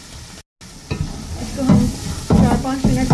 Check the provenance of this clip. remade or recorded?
recorded